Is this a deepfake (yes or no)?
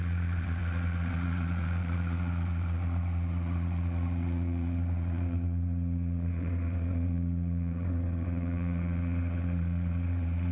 yes